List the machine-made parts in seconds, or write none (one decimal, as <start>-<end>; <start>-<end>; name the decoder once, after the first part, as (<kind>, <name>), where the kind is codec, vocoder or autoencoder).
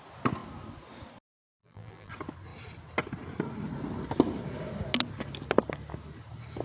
1.6-2.1 (vocoder, BigVGAN v2)